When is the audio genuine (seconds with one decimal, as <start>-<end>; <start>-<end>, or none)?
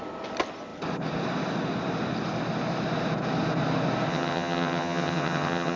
0.0-4.1